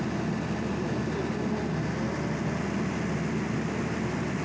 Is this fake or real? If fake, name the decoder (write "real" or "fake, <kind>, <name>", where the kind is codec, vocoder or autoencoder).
real